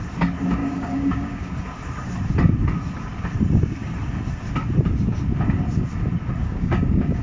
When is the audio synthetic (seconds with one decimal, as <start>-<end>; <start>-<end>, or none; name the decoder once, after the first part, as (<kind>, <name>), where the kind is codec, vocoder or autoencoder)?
0.6-1.5 (codec, DAC); 6.4-7.2